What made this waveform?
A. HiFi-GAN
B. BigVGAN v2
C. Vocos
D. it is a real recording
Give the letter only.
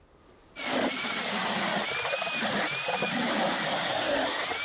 D